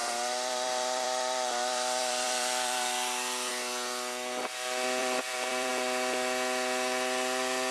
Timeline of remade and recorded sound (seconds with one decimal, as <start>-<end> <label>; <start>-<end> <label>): 0.0-3.5 remade; 3.5-5.0 recorded; 5.0-5.7 remade; 5.7-7.7 recorded